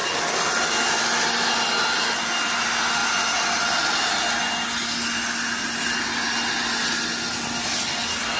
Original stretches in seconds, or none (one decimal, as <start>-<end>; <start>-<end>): 0.0-8.4